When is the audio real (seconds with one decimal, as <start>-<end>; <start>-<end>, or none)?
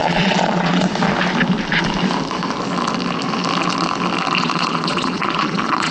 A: 0.9-4.4